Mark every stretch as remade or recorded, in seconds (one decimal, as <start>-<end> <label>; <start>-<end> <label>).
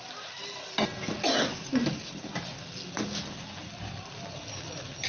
0.0-5.1 recorded